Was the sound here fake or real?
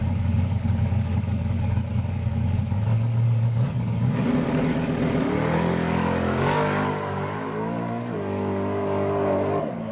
fake